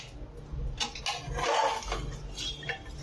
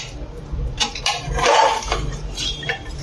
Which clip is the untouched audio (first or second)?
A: first